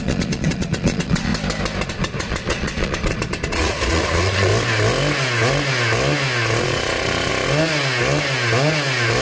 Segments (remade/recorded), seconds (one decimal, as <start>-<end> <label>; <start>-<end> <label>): 0.0-1.3 remade; 1.3-1.9 recorded; 1.9-4.5 remade; 4.5-6.6 recorded; 6.6-7.3 remade; 7.3-9.2 recorded